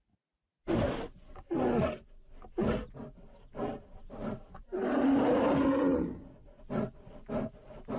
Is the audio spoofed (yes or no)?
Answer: no